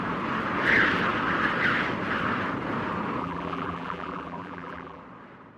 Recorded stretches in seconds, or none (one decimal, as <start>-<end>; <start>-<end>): 0.0-3.2; 5.0-5.6